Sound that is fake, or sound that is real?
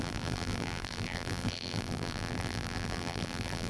fake